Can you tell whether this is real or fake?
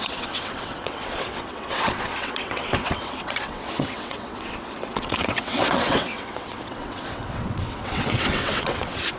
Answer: fake